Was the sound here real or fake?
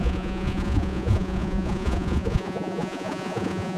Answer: fake